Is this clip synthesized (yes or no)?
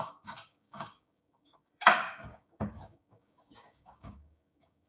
yes